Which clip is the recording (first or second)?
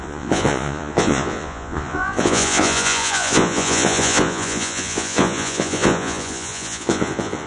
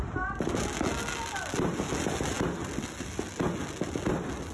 second